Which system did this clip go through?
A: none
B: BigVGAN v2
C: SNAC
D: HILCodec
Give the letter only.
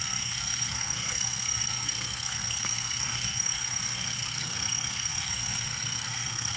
C